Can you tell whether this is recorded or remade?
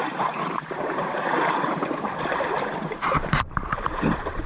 remade